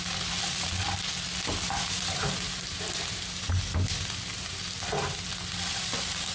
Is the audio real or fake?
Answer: real